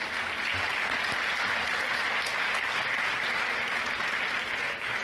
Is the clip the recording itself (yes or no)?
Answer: yes